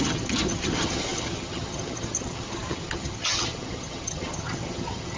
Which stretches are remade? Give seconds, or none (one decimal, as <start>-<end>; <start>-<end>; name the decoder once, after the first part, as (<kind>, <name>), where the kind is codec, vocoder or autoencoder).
0.0-5.2 (vocoder, HiFi-GAN)